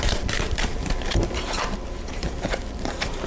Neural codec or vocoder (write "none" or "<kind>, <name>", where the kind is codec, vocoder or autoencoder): vocoder, BigVGAN v2